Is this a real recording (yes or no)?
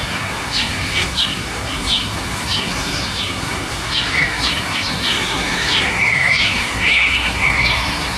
no